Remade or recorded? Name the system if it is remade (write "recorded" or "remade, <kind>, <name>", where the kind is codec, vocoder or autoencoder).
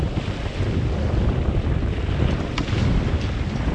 recorded